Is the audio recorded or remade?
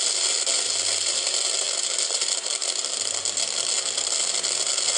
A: recorded